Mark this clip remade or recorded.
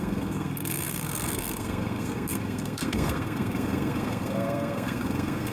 remade